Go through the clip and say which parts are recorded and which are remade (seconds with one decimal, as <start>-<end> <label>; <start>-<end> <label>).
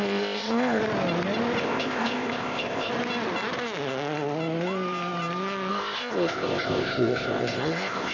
0.0-0.8 remade; 0.8-1.6 recorded; 1.6-2.9 remade; 2.9-5.7 recorded; 5.7-8.1 remade